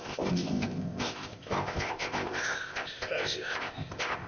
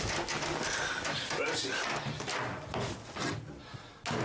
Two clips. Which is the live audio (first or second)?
second